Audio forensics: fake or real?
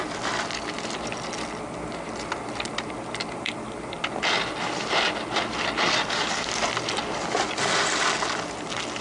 real